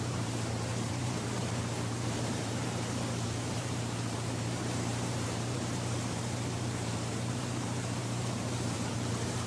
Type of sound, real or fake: fake